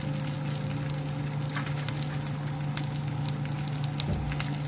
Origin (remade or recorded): recorded